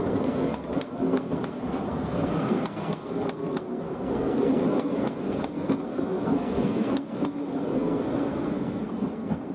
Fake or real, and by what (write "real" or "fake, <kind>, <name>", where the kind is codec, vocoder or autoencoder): fake, codec, SNAC